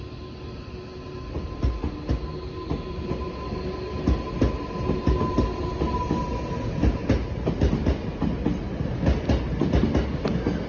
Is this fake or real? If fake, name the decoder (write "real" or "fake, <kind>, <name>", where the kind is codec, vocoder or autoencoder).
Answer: real